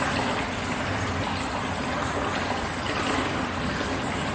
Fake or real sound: real